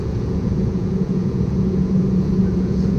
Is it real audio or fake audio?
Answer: fake